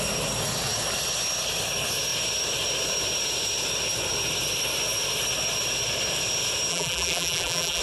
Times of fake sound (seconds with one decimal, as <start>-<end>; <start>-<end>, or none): 6.7-7.8